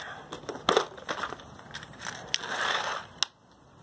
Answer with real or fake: real